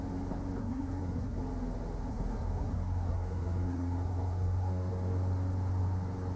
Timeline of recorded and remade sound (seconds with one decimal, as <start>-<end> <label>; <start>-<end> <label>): 0.0-0.6 recorded; 0.6-1.4 remade; 1.4-2.1 recorded; 2.1-4.9 remade; 4.9-6.4 recorded